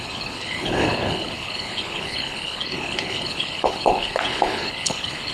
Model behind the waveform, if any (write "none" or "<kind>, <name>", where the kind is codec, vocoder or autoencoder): codec, HILCodec